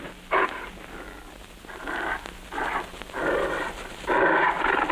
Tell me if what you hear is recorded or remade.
recorded